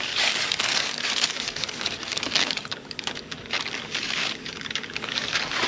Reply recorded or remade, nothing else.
remade